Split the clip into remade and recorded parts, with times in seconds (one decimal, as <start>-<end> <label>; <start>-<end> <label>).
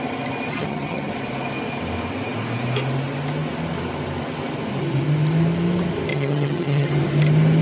0.0-0.5 recorded; 0.5-1.1 remade; 1.1-6.1 recorded; 6.1-6.9 remade; 6.9-7.6 recorded